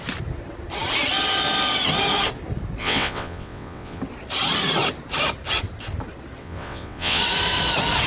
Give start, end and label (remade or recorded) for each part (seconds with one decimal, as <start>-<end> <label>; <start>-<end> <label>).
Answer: 0.0-2.8 recorded; 2.8-4.0 remade; 4.0-6.4 recorded; 6.4-7.2 remade; 7.2-8.1 recorded